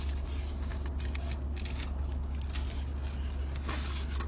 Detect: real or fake real